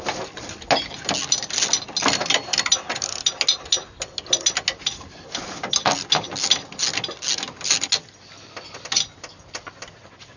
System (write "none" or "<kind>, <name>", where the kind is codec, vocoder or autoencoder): none